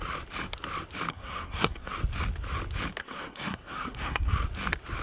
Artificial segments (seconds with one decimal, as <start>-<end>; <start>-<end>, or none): 1.1-1.9; 3.0-4.3